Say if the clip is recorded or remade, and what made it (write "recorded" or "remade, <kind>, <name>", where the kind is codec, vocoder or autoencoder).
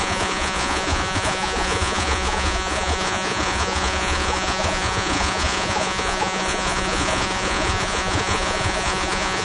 remade, vocoder, Vocos